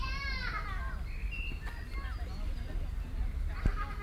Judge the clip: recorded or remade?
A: recorded